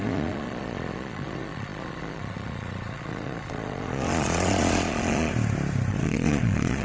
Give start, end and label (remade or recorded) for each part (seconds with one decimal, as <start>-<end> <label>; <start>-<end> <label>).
0.0-5.3 remade; 5.3-5.9 recorded; 5.9-6.8 remade